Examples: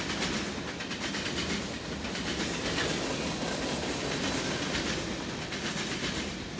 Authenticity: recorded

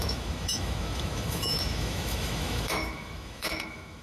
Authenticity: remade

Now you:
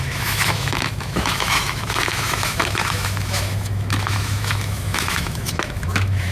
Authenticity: remade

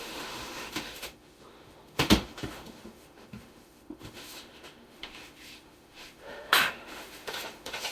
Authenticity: remade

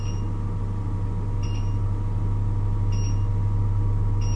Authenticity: recorded